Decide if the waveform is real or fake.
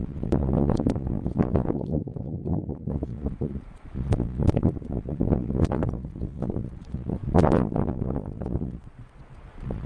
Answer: fake